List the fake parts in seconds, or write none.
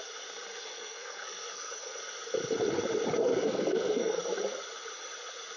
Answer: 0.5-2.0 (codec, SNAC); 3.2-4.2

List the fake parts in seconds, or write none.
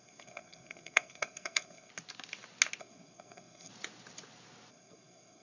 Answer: 0.0-1.9 (codec, SNAC); 2.8-3.7; 4.7-5.4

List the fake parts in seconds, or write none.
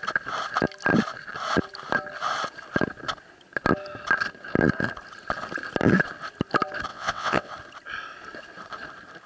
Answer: 6.9-7.5 (vocoder, WaveNeXt)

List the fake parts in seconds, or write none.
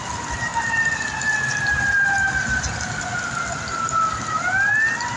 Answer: none